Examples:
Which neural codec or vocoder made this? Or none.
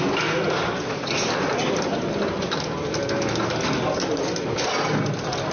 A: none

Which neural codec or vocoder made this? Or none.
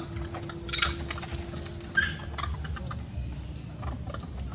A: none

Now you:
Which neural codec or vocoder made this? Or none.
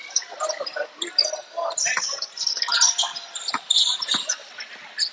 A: none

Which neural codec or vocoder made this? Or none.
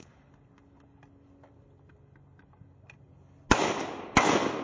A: none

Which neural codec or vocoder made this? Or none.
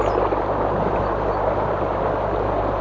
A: none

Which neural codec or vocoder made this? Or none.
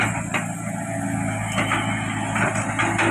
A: none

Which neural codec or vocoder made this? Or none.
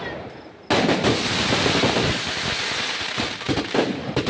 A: none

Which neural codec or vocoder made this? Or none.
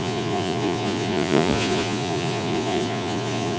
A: vocoder, Vocos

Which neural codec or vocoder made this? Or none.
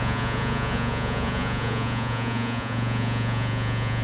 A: vocoder, Vocos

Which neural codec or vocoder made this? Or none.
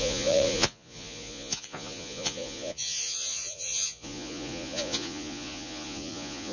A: vocoder, Vocos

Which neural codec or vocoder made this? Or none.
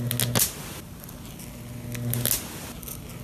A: none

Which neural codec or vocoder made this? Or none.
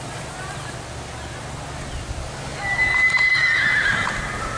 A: none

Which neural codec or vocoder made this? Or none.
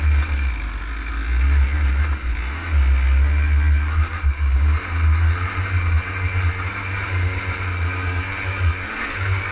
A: none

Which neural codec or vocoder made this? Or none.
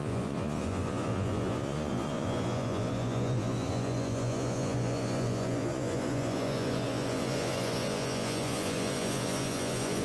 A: vocoder, Vocos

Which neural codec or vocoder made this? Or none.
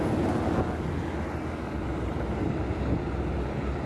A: none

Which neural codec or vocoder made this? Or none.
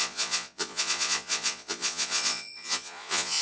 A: vocoder, Vocos